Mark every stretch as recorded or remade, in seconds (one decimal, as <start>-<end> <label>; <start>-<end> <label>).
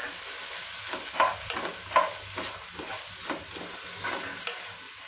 0.0-5.1 recorded